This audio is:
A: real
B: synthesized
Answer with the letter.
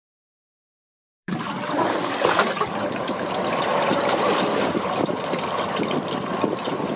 B